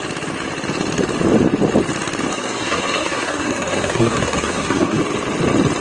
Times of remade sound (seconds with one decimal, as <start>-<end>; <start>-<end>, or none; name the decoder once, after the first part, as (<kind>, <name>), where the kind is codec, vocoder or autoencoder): 2.3-5.0 (codec, SNAC)